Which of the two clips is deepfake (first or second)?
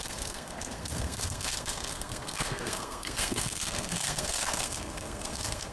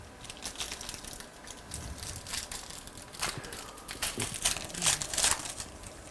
first